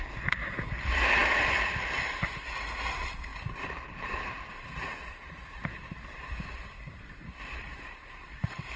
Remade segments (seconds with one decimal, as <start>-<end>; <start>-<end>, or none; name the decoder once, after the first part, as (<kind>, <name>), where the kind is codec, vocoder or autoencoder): 3.3-8.8 (vocoder, BigVGAN v2)